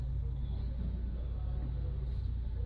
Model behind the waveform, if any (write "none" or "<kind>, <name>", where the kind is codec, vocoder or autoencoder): none